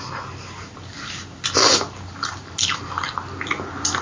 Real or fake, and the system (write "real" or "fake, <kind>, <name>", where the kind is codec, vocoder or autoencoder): real